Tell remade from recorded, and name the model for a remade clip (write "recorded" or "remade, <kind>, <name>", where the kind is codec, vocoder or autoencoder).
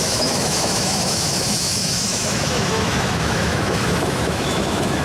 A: remade, autoencoder, DAC-VAE